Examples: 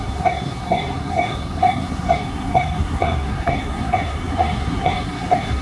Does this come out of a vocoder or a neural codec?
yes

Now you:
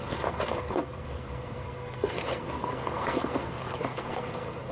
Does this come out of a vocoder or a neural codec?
yes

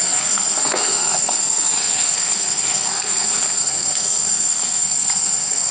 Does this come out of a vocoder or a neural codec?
yes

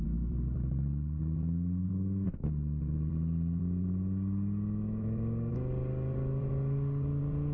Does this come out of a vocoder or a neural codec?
no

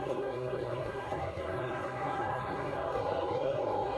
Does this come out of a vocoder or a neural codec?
yes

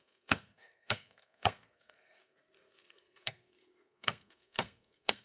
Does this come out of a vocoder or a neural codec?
yes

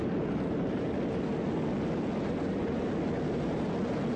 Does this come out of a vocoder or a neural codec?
no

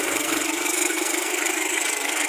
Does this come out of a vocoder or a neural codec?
yes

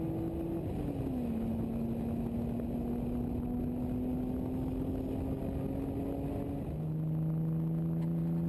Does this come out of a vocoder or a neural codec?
no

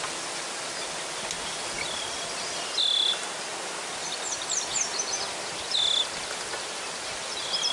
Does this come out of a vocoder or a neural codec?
no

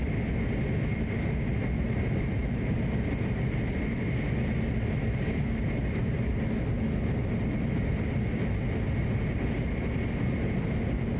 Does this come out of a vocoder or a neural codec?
no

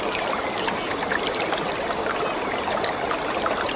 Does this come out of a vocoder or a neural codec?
no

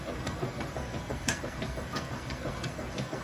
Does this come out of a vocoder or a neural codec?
yes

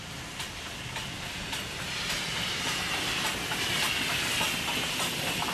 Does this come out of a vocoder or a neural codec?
no